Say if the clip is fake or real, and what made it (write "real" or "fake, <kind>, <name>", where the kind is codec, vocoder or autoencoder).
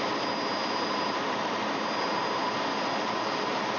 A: real